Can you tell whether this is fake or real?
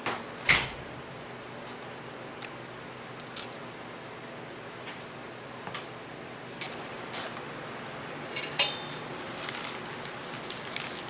real